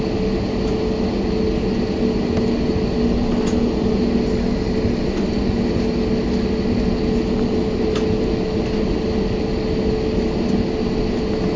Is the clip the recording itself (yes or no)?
yes